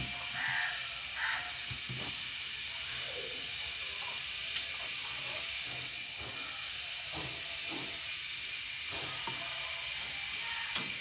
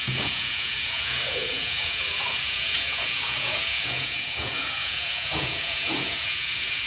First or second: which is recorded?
first